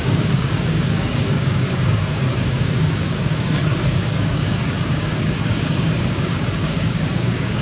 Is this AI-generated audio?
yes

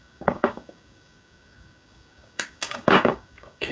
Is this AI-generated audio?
yes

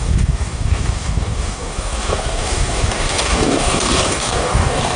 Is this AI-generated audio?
yes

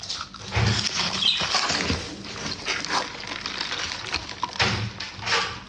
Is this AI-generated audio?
no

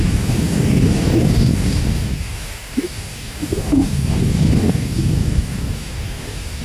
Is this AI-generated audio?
yes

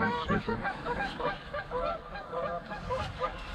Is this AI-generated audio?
yes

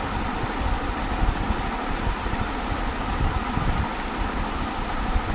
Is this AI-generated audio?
no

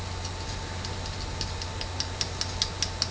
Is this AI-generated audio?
no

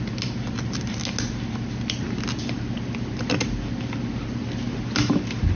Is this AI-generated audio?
no